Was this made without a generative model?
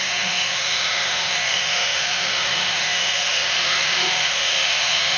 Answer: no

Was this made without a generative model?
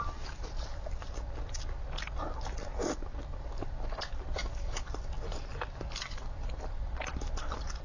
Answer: yes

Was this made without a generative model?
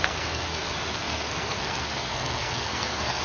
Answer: no